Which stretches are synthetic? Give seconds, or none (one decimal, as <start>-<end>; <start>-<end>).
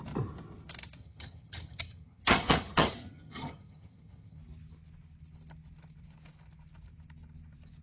1.0-4.4